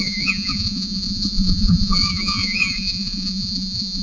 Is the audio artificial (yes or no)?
yes